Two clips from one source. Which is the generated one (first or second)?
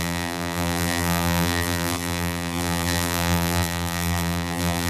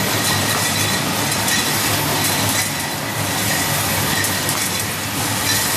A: first